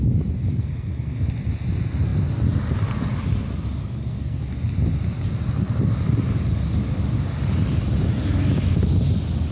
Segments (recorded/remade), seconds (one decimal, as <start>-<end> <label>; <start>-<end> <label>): 0.0-0.5 recorded; 0.5-1.3 remade; 1.3-3.8 recorded; 3.8-4.4 remade; 4.4-9.5 recorded